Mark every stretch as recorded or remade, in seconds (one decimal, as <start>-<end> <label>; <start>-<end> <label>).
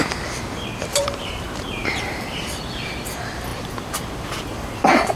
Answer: 0.0-0.9 recorded; 0.9-2.8 remade; 2.8-5.2 recorded